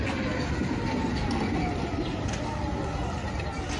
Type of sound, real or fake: real